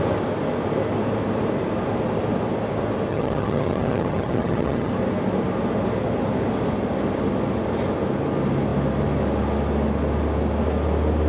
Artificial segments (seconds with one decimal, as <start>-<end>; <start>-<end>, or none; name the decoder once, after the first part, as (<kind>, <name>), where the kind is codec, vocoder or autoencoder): 3.1-4.9 (vocoder, HiFi-GAN)